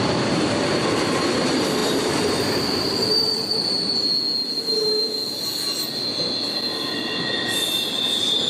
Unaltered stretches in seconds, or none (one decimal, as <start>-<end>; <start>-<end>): 0.8-1.4; 3.5-8.0